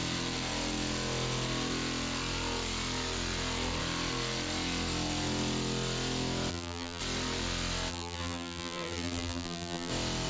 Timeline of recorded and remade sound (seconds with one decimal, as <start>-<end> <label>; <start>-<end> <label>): 0.0-6.5 recorded; 6.5-7.0 remade; 7.0-7.9 recorded; 7.9-9.9 remade; 9.9-10.3 recorded

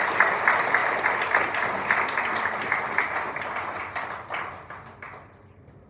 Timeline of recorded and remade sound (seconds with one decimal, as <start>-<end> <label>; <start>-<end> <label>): 0.0-5.9 recorded

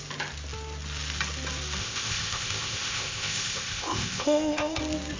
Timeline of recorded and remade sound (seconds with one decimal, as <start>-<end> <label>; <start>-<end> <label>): 0.0-1.8 recorded; 1.8-4.8 remade; 4.8-5.2 recorded